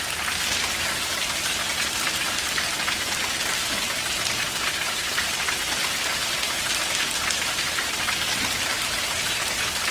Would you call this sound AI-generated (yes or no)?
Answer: no